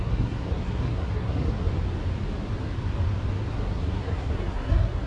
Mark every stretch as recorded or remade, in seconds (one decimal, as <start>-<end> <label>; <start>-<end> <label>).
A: 0.0-1.7 remade; 1.7-3.5 recorded; 3.5-5.1 remade